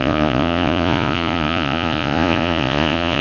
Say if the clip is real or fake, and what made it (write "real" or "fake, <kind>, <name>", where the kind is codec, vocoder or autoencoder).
fake, vocoder, Vocos